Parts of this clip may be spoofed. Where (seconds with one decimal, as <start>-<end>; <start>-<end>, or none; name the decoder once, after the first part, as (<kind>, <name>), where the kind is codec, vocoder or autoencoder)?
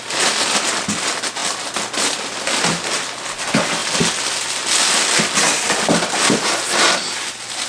none